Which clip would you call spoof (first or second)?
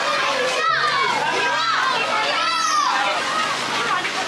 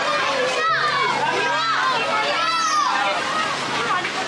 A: first